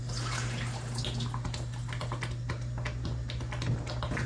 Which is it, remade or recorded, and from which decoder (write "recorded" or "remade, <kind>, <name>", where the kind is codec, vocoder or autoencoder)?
recorded